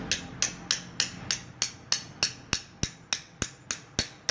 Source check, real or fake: real